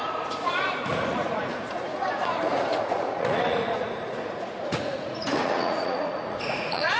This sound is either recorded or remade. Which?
remade